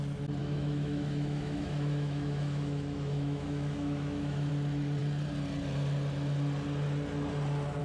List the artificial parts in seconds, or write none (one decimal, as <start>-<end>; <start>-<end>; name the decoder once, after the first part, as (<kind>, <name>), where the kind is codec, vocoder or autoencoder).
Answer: 0.4-4.5 (autoencoder, DAC-VAE)